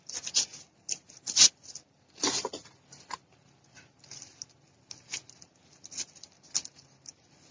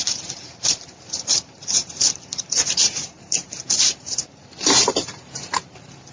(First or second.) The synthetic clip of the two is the second